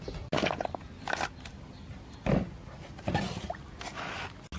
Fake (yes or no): no